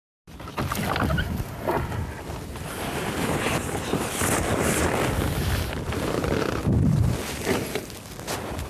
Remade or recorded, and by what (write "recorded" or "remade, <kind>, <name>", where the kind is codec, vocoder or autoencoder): recorded